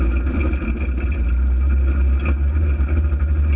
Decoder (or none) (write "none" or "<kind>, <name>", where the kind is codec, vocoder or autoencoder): none